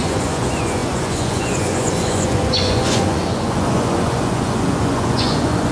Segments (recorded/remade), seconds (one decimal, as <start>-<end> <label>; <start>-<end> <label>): 0.0-5.7 remade